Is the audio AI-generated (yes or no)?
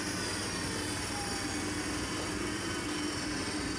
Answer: no